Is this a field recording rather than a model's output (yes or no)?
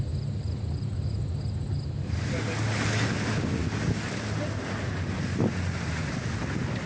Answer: yes